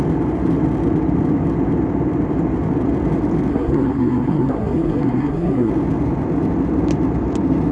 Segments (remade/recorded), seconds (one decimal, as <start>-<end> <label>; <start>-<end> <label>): 0.0-3.5 recorded; 3.5-5.7 remade; 5.7-7.7 recorded